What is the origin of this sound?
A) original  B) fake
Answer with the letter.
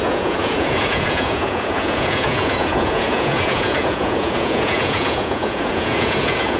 B